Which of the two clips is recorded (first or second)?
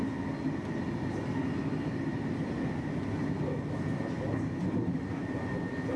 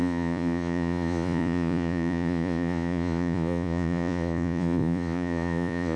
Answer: first